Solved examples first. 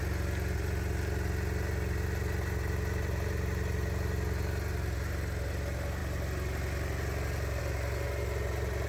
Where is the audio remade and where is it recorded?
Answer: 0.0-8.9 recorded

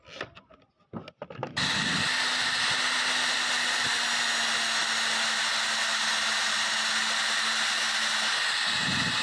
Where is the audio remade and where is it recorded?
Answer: 0.0-9.2 recorded

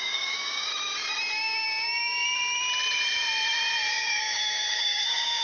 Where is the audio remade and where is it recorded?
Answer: 0.0-0.7 remade; 0.7-3.9 recorded; 3.9-5.4 remade

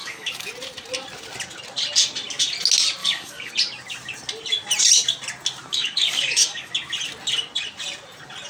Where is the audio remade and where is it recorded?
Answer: 0.0-0.5 remade; 0.5-3.0 recorded; 3.0-3.5 remade; 3.5-5.7 recorded; 5.7-6.7 remade; 6.7-8.5 recorded

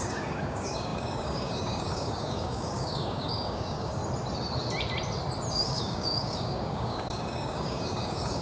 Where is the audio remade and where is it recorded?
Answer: 0.0-4.0 remade; 4.0-5.5 recorded; 5.5-8.4 remade

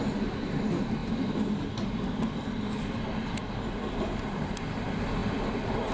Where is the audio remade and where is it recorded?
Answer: 0.0-5.9 recorded